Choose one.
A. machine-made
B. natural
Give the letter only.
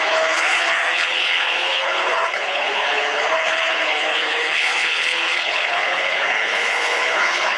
A